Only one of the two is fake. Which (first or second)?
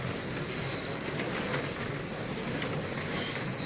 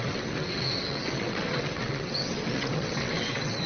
second